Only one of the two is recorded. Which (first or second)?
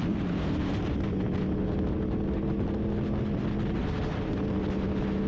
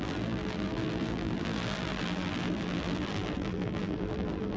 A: first